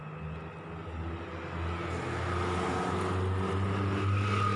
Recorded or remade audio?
recorded